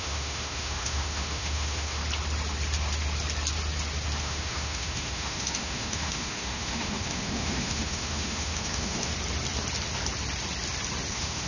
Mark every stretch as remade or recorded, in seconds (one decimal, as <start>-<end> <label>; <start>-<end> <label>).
0.0-2.0 remade; 2.0-4.2 recorded; 4.2-9.1 remade; 9.1-11.1 recorded; 11.1-11.5 remade